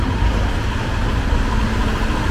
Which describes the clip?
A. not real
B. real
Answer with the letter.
B